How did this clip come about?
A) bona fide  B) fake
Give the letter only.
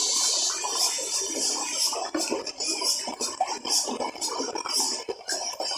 A